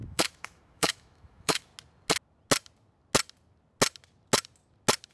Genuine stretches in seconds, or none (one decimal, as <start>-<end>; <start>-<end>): 1.7-5.1